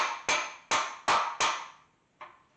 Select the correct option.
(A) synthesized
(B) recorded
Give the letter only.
B